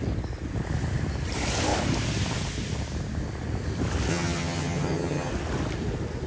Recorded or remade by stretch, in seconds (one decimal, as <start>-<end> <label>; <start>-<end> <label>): 0.0-4.1 recorded; 4.1-5.3 remade; 5.3-6.3 recorded